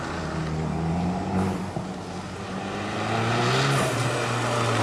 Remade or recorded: recorded